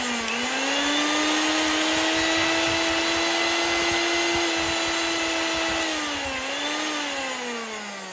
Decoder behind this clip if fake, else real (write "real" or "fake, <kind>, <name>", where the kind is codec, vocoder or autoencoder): real